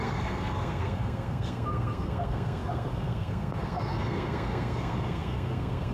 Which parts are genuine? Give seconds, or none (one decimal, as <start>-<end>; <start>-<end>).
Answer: none